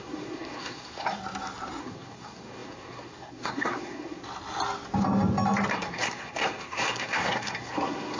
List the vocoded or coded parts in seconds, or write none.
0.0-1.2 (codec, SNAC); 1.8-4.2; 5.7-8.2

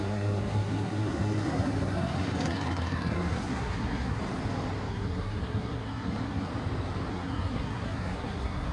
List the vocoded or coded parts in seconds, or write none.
0.0-4.2 (codec, SNAC); 4.9-6.5; 7.1-8.7

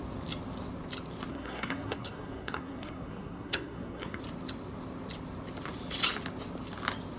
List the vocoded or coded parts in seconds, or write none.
1.3-4.2 (codec, SNAC)

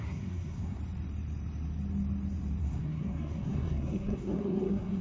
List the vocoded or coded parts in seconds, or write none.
0.0-0.8 (codec, SNAC); 2.6-5.0